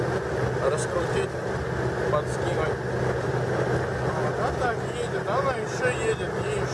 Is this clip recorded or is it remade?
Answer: recorded